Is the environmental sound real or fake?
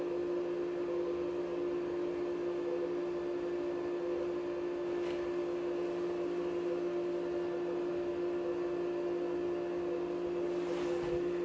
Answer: real